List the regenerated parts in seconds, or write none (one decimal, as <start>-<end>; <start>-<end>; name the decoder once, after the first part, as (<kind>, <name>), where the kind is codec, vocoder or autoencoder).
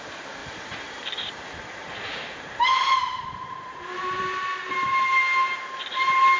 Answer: 0.4-4.2 (vocoder, BigVGAN v2)